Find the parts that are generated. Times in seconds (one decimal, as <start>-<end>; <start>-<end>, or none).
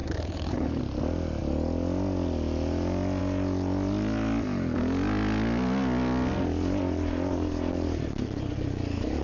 0.0-0.8